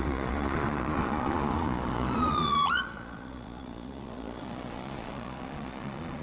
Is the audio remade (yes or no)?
yes